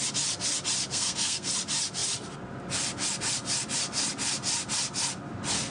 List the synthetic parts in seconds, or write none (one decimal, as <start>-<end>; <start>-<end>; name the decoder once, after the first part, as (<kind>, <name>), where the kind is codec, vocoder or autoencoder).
0.9-1.5 (codec, SNAC)